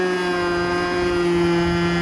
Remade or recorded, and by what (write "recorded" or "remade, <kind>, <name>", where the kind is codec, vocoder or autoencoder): recorded